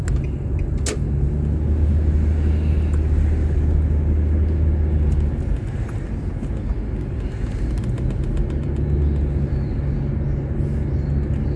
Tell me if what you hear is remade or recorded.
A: recorded